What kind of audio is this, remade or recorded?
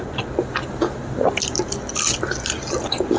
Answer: recorded